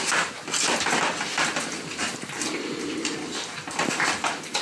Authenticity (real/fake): real